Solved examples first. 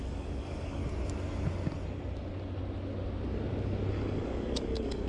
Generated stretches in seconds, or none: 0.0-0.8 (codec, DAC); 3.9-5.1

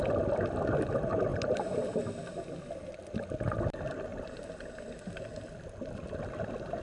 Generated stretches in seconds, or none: 1.3-1.9 (vocoder, BigVGAN v2); 4.1-5.9